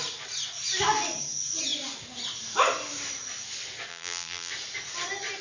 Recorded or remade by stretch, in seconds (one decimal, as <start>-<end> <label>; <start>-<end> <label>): 0.0-3.9 recorded; 3.9-4.5 remade; 4.5-5.4 recorded